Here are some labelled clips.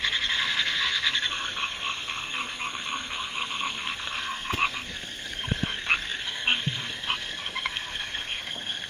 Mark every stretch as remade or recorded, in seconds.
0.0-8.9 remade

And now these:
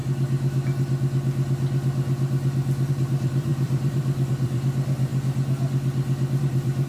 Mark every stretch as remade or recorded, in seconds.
0.0-2.9 recorded; 2.9-5.1 remade; 5.1-6.4 recorded; 6.4-6.9 remade